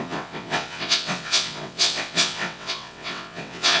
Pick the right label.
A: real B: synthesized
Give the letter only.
B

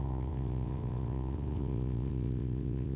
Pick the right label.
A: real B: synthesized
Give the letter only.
B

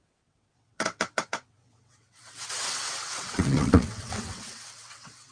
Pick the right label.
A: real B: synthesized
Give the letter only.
B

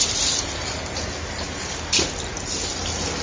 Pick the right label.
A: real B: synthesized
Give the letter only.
A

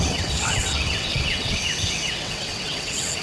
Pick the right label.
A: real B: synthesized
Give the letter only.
B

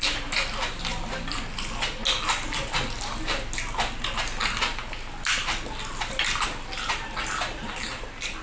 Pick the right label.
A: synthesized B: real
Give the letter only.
B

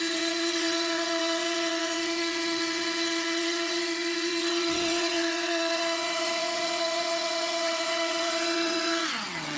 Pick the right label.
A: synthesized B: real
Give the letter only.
A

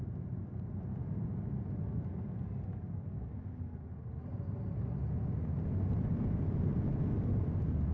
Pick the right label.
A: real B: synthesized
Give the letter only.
A